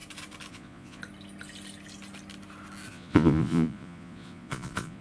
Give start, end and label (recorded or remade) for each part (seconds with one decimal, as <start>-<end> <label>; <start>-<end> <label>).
0.0-0.5 recorded; 0.5-1.0 remade; 1.0-2.9 recorded; 2.9-5.0 remade